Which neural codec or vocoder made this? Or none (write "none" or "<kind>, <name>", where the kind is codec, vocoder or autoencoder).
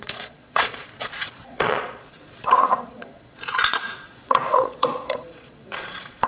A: vocoder, Vocos